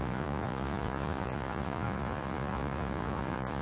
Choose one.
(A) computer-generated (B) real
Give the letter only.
A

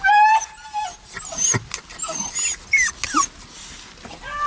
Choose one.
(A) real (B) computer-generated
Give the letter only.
A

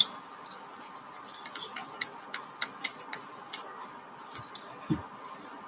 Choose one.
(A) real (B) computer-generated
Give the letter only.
A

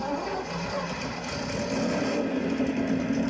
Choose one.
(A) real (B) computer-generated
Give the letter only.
A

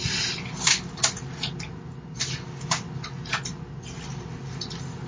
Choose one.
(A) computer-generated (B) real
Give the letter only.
B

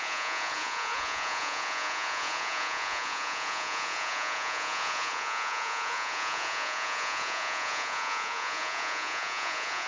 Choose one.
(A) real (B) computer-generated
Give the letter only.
B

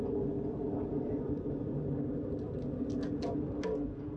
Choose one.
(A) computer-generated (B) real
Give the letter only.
B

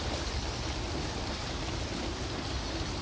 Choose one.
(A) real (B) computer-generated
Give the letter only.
A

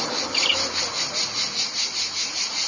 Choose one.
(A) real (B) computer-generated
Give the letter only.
A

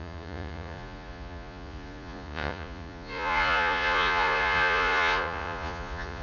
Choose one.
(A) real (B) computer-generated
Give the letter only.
B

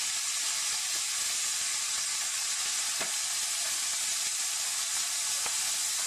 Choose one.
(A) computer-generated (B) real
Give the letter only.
B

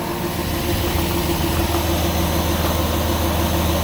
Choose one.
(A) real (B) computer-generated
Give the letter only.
A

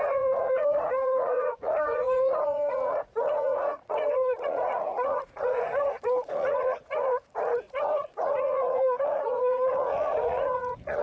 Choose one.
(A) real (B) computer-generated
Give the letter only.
B